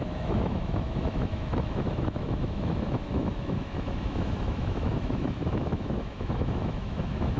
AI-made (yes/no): yes